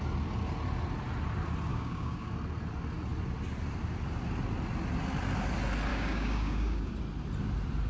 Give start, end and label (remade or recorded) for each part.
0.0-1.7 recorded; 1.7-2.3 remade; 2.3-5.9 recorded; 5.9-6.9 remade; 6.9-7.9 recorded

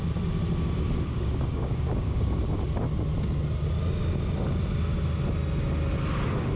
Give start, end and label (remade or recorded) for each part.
0.0-1.1 recorded; 1.1-2.4 remade; 2.4-6.6 recorded

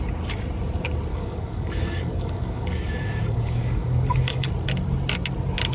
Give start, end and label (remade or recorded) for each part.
0.0-1.1 recorded; 1.1-4.5 remade; 4.5-5.7 recorded

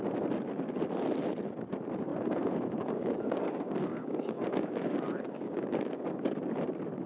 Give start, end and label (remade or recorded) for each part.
0.0-2.1 recorded; 2.1-6.4 remade; 6.4-7.1 recorded

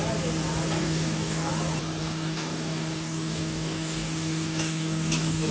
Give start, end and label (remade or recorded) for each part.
0.0-0.8 recorded; 0.8-1.5 remade; 1.5-2.0 recorded; 2.0-5.5 remade

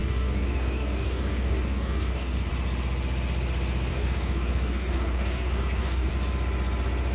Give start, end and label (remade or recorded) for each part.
0.0-2.5 remade; 2.5-3.9 recorded; 3.9-6.1 remade; 6.1-7.1 recorded

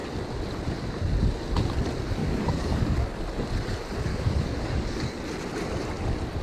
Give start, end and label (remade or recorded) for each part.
0.0-2.2 recorded; 2.2-3.2 remade; 3.2-4.1 recorded; 4.1-5.2 remade; 5.2-6.4 recorded

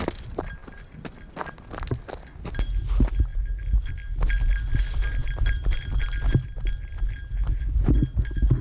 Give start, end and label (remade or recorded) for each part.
0.0-8.6 recorded